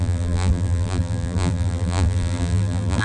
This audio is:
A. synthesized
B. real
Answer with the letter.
A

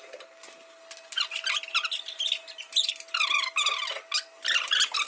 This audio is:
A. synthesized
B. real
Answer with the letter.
B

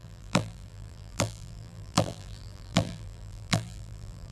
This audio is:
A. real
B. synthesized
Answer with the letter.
B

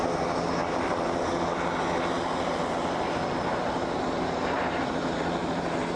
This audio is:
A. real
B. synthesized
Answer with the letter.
A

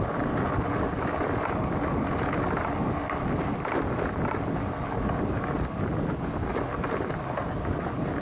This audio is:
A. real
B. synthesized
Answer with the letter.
A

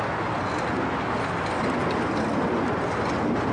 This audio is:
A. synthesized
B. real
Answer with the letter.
B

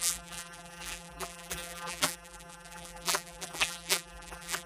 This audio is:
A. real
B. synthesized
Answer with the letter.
B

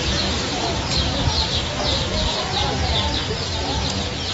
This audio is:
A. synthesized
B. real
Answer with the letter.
B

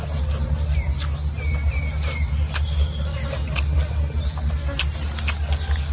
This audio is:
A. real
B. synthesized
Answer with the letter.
A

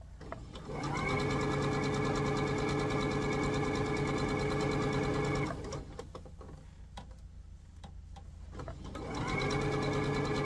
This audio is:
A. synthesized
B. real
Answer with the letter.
B